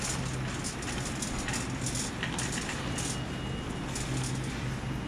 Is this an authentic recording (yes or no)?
yes